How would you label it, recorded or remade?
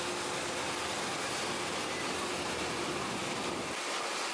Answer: recorded